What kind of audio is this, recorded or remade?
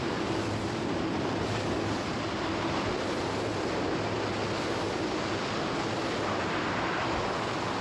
recorded